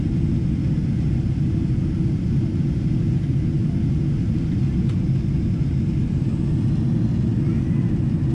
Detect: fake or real real